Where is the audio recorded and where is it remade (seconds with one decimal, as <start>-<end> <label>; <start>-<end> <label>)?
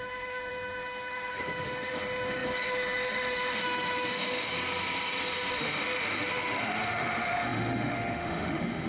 0.0-4.5 remade; 4.5-5.5 recorded; 5.5-8.9 remade